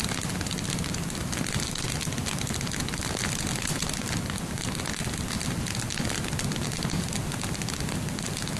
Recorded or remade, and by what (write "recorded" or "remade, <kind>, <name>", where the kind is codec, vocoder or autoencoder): recorded